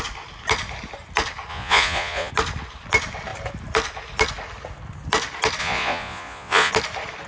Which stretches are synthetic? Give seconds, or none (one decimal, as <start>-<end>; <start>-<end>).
1.5-2.3; 5.6-6.7